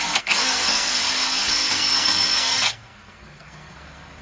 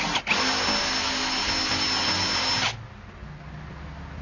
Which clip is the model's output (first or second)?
first